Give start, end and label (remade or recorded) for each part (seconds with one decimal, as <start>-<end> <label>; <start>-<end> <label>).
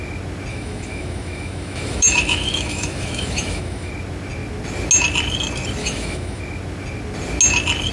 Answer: 0.0-0.5 recorded; 0.5-3.9 remade; 3.9-5.8 recorded; 5.8-6.4 remade; 6.4-7.9 recorded